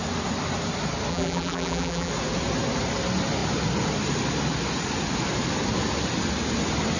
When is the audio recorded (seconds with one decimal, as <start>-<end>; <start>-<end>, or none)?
0.0-1.1; 2.1-7.0

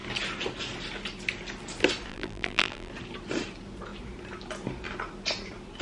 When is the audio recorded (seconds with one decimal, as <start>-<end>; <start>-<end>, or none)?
0.0-2.1; 2.9-5.8